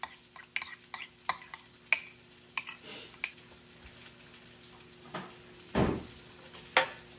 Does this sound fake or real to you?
real